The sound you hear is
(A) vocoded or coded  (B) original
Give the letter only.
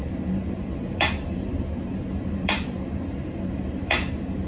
A